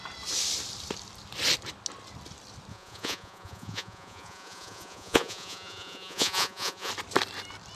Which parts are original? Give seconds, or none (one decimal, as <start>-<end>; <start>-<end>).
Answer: 0.0-2.7; 6.9-7.7